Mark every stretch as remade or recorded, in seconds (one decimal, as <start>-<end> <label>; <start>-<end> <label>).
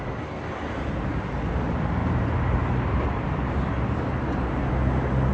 0.0-2.0 recorded; 2.0-5.3 remade